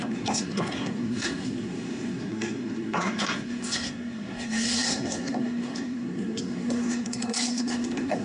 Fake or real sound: fake